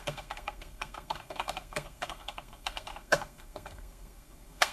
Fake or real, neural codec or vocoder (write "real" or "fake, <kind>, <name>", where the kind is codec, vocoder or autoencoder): fake, codec, SNAC